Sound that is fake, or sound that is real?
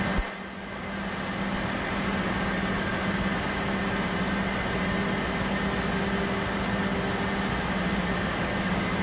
real